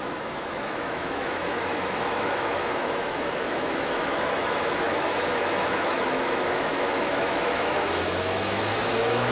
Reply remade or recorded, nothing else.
remade